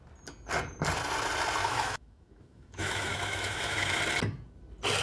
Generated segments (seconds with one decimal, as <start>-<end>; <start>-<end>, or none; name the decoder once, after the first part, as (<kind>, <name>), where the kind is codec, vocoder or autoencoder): 1.6-4.0 (autoencoder, DAC-VAE)